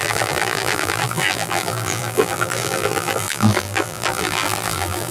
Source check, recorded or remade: remade